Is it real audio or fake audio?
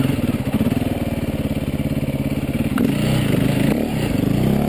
real